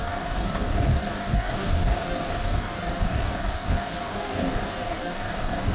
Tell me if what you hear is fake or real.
fake